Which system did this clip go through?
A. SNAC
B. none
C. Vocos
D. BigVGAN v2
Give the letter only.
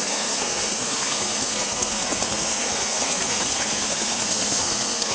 A